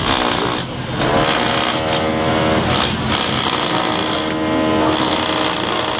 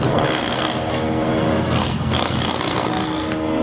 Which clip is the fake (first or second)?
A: second